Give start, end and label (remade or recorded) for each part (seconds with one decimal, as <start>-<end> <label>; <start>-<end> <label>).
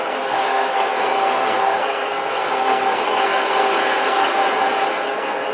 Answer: 0.0-4.4 remade; 4.4-4.9 recorded; 4.9-5.5 remade